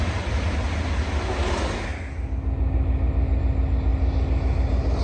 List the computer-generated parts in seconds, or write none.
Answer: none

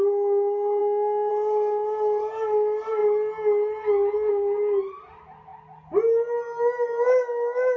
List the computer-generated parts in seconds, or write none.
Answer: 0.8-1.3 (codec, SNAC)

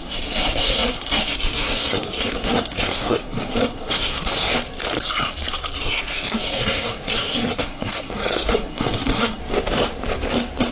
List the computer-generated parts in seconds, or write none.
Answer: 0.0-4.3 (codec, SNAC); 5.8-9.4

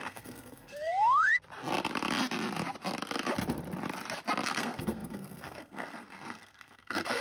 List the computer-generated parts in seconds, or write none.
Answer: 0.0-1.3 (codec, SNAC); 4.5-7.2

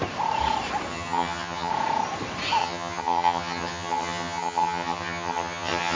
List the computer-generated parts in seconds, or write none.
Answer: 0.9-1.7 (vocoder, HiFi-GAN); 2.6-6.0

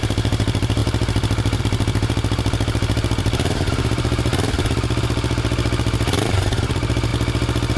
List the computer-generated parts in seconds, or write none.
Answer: 0.0-4.3 (vocoder, BigVGAN v2); 5.0-7.1

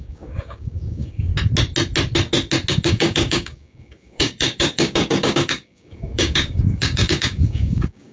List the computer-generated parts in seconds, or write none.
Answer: 0.0-1.3 (codec, DAC); 2.7-8.1